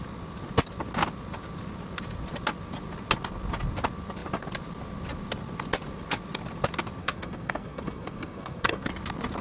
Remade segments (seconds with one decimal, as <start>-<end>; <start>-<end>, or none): 7.0-8.9